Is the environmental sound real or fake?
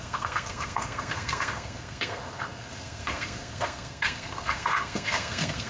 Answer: fake